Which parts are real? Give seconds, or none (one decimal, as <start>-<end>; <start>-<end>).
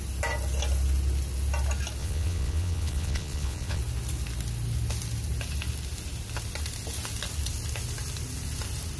0.0-2.0; 3.8-9.0